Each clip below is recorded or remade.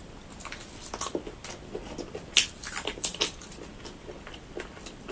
recorded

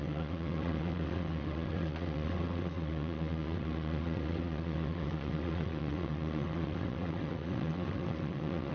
remade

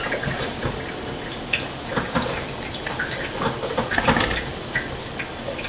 recorded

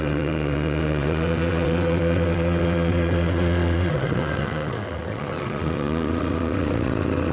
remade